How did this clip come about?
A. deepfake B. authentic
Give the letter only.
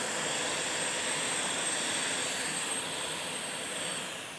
B